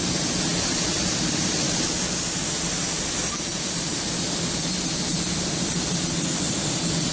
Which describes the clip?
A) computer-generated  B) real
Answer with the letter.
B